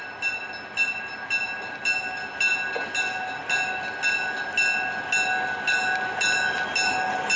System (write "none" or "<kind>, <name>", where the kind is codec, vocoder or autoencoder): none